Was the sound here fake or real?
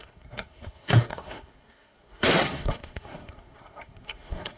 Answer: fake